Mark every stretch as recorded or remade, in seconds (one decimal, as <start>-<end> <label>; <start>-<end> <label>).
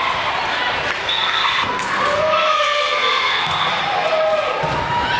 0.0-1.0 recorded; 1.0-3.8 remade; 3.8-5.2 recorded